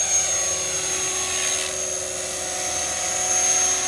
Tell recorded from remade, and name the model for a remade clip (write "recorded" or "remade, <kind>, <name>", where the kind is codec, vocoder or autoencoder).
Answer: recorded